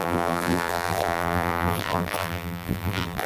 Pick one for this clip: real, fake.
fake